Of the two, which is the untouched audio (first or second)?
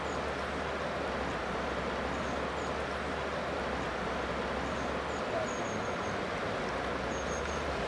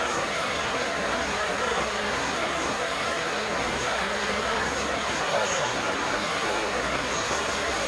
first